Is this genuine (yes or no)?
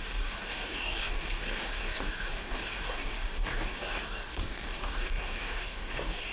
no